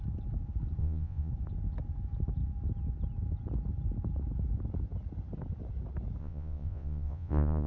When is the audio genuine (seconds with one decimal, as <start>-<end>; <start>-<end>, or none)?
0.0-0.8; 1.3-6.2